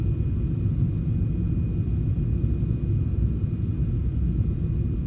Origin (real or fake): real